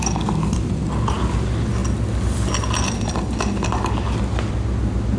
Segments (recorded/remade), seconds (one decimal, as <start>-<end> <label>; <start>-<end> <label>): 0.0-5.2 recorded